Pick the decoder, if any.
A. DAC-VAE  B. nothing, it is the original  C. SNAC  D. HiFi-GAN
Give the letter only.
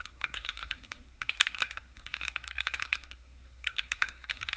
C